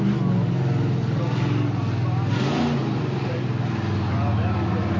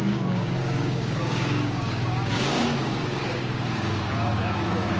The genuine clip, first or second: first